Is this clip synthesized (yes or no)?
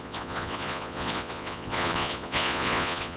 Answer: yes